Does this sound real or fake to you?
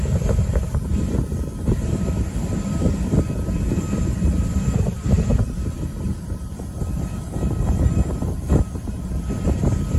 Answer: fake